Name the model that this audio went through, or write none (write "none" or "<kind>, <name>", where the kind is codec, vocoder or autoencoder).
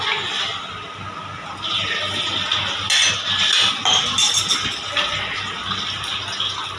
none